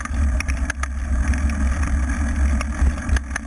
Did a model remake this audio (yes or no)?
no